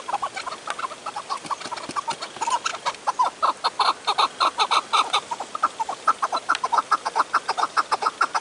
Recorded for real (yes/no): yes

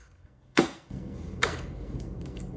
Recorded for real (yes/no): no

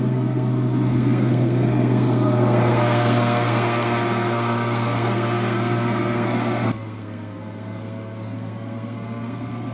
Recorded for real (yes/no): no